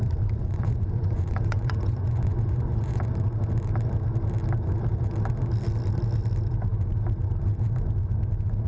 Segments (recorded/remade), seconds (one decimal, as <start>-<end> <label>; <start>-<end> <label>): 0.0-0.4 recorded; 0.4-3.0 remade; 3.0-8.7 recorded